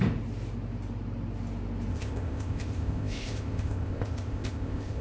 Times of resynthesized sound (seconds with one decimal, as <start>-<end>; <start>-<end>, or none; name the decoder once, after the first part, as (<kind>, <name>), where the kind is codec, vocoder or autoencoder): 1.9-5.0 (codec, ZipCodec)